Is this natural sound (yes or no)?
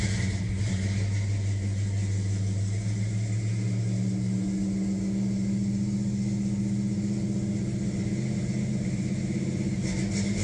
yes